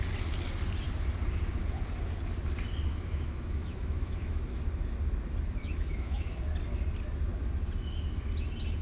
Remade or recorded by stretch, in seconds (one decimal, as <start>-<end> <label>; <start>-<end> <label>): 0.0-2.9 recorded; 2.9-4.6 remade; 4.6-5.6 recorded; 5.6-6.4 remade; 6.4-8.8 recorded